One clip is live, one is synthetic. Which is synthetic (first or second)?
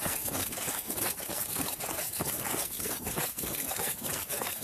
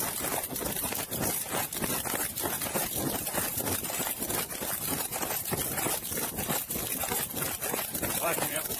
first